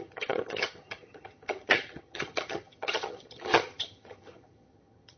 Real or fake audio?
fake